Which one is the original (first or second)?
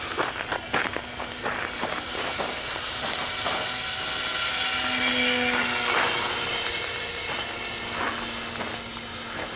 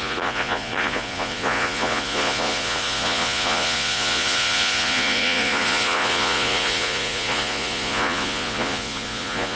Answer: first